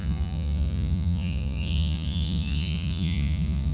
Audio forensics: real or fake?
fake